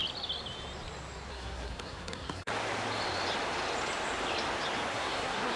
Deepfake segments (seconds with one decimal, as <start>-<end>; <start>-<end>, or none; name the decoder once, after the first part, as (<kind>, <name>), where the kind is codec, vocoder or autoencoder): 1.3-2.5 (codec, SNAC); 4.9-5.6